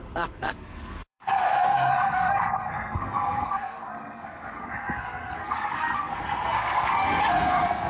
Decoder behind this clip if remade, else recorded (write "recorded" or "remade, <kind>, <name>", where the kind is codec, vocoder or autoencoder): remade, codec, SNAC